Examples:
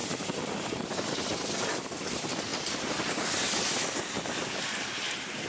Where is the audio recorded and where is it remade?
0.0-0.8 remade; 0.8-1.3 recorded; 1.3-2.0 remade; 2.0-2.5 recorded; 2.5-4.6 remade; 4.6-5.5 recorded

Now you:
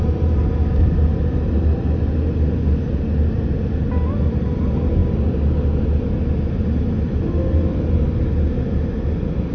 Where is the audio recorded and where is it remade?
0.0-9.5 recorded

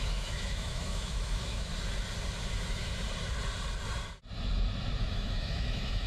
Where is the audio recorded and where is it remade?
0.0-1.7 remade; 1.7-2.4 recorded; 2.4-2.9 remade; 2.9-5.0 recorded; 5.0-6.1 remade

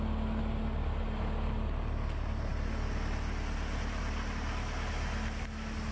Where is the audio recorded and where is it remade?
0.0-5.9 recorded

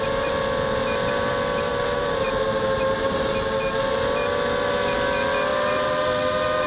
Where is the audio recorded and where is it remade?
0.0-1.7 recorded; 1.7-3.3 remade; 3.3-5.5 recorded; 5.5-6.2 remade; 6.2-6.7 recorded

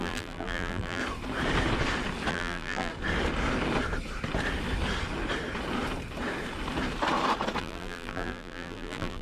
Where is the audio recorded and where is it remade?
0.0-1.0 remade; 1.0-2.3 recorded; 2.3-2.9 remade; 2.9-7.6 recorded; 7.6-9.2 remade